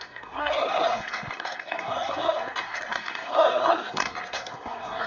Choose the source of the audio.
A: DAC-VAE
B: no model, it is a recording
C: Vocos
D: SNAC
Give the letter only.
D